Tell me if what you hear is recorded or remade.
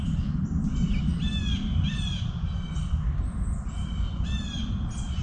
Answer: recorded